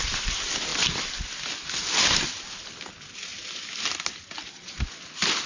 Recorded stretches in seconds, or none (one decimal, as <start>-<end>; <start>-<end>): 0.0-5.5